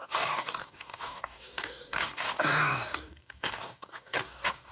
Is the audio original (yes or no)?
no